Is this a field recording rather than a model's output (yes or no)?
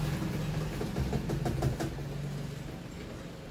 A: yes